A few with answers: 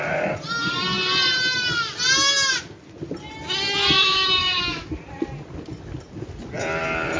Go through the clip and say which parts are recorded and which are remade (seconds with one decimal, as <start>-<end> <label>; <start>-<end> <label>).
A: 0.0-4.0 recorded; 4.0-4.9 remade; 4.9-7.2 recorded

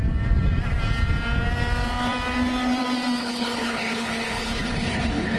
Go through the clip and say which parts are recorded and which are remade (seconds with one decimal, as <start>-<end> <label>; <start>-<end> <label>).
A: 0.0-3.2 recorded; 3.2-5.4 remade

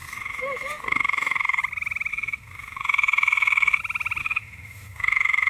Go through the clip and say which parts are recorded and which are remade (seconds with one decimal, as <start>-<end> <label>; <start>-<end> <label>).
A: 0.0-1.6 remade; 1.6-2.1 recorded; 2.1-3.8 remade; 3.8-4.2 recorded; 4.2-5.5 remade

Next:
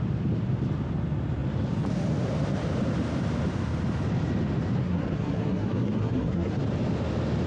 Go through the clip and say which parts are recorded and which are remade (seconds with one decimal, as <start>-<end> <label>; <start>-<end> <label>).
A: 0.0-4.8 recorded; 4.8-6.6 remade; 6.6-7.5 recorded

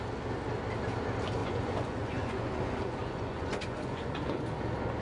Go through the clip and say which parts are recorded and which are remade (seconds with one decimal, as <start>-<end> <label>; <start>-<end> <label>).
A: 0.0-1.4 recorded; 1.4-4.4 remade; 4.4-5.0 recorded

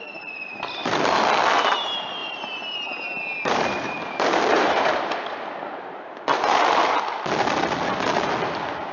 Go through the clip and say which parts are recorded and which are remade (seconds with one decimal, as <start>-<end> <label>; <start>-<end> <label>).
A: 0.0-2.2 recorded; 2.2-7.0 remade; 7.0-8.9 recorded